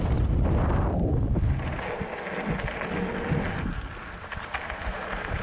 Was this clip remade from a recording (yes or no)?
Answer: no